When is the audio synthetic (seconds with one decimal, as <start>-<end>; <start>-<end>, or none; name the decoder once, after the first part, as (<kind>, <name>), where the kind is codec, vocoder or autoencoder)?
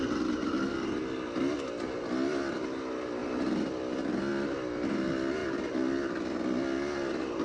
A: 3.2-4.3 (vocoder, BigVGAN v2); 5.4-6.1